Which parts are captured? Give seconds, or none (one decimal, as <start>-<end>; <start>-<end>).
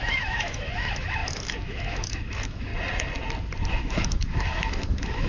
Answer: 2.7-3.7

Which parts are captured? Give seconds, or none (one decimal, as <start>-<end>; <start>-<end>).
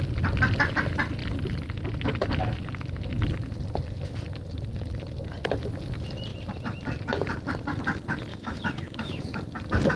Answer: 0.0-8.3; 9.2-10.0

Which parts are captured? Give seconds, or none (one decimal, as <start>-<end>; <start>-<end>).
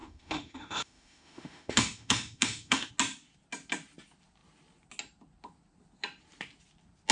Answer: 2.9-7.1